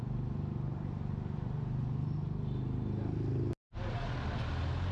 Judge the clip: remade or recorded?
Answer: recorded